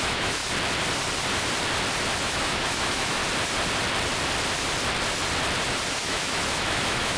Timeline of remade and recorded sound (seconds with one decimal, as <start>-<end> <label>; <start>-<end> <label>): 0.0-0.4 remade; 0.4-2.2 recorded; 2.2-3.2 remade; 3.2-5.9 recorded; 5.9-7.2 remade